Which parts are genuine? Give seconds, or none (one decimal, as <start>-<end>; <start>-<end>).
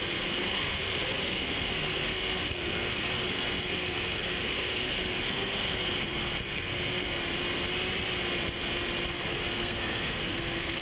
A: 7.2-9.1